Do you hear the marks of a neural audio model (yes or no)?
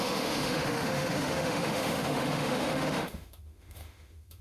yes